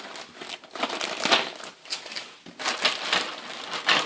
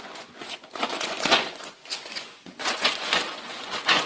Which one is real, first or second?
first